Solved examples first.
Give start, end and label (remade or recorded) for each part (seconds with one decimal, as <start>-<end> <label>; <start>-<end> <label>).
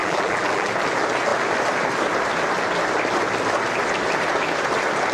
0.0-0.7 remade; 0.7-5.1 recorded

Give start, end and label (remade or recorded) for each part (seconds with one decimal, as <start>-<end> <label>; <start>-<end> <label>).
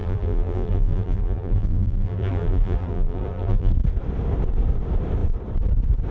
0.0-3.7 remade; 3.7-6.1 recorded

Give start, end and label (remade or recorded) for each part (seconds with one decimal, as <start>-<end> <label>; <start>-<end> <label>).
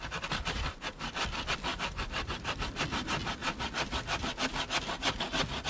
0.0-1.7 recorded; 1.7-2.7 remade; 2.7-5.7 recorded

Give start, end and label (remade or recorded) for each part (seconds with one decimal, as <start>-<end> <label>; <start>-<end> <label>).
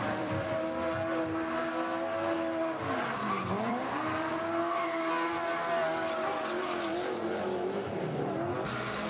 0.0-1.6 remade; 1.6-3.7 recorded; 3.7-4.4 remade; 4.4-9.1 recorded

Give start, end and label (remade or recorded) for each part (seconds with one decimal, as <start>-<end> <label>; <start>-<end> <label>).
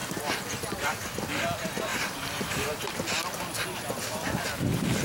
0.0-1.0 remade; 1.0-1.9 recorded; 1.9-2.8 remade; 2.8-5.0 recorded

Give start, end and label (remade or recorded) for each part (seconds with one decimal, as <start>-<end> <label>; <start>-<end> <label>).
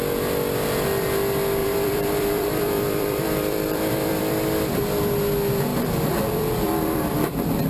0.0-1.6 recorded; 1.6-4.2 remade; 4.2-5.7 recorded; 5.7-7.3 remade; 7.3-7.7 recorded